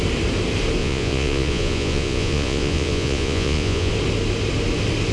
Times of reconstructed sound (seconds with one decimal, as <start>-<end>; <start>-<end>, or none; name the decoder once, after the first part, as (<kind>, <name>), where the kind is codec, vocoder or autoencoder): 0.8-3.9 (vocoder, Vocos)